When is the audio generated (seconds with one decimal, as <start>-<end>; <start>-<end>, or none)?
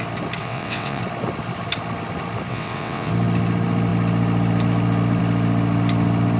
0.4-1.0; 2.5-3.1